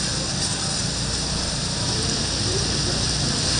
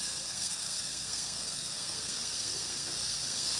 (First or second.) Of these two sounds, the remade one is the second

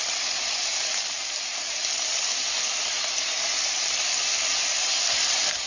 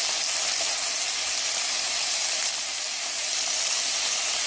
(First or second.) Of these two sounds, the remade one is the first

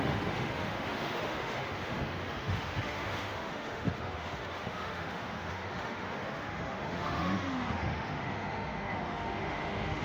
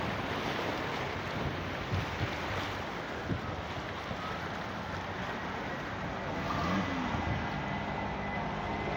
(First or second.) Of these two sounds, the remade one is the first